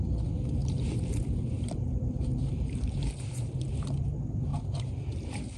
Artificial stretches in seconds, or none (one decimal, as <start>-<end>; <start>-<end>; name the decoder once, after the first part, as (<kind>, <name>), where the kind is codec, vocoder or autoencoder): 0.6-3.7 (vocoder, BigVGAN v2); 4.5-5.6